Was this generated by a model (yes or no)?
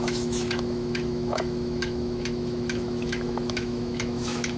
yes